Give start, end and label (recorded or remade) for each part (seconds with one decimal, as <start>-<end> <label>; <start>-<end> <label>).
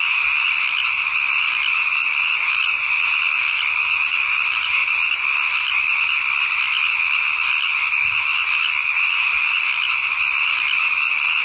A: 0.0-11.4 recorded